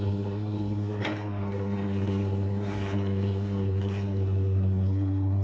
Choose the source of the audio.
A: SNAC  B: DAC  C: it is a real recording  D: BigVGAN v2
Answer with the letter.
A